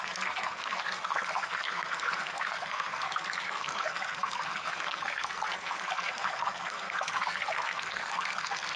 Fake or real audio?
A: fake